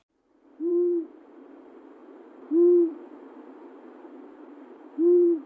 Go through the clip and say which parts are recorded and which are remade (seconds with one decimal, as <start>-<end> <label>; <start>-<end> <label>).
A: 0.0-0.7 recorded; 0.7-1.5 remade; 1.5-2.0 recorded; 2.0-5.5 remade